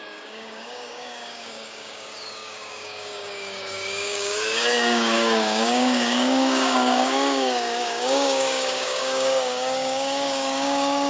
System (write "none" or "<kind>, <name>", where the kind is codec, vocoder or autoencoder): codec, DAC